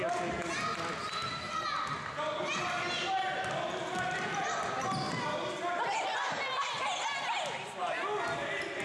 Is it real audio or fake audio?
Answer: real